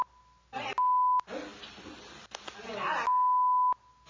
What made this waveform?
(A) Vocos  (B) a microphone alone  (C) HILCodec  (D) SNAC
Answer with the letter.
B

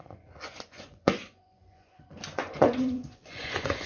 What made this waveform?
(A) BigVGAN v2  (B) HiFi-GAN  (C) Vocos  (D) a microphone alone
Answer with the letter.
C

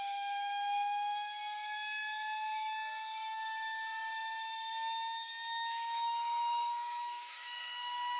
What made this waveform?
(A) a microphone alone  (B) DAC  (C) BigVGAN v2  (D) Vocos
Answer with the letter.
B